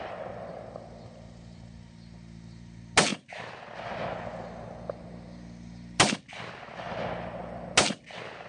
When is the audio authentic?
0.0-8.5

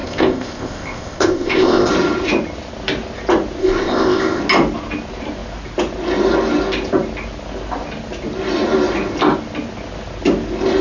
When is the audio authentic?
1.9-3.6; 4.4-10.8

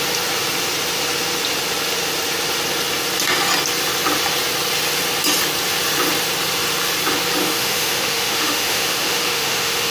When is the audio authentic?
0.0-7.4